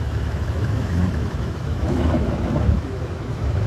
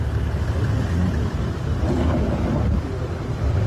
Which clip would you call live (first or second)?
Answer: second